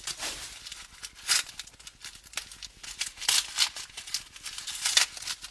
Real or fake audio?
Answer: real